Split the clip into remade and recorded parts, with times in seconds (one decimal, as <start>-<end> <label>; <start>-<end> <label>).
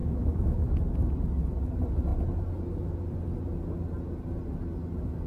0.0-0.6 remade; 0.6-5.3 recorded